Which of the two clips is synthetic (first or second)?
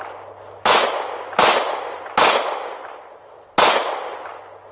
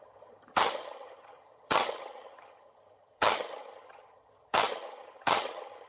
second